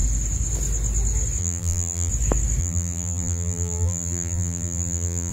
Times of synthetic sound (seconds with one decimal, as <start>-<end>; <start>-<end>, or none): 1.4-2.1; 2.6-5.3